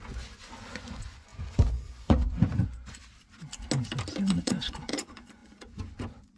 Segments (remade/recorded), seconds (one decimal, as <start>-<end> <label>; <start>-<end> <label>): 0.0-3.0 remade; 3.0-4.3 recorded; 4.3-6.4 remade